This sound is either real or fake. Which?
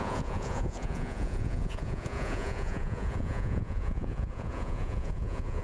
fake